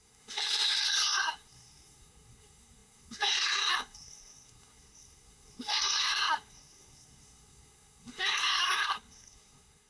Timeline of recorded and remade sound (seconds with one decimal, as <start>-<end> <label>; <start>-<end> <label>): 0.0-9.9 remade